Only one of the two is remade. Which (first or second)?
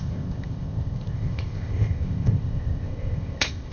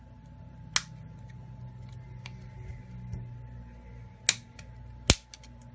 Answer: first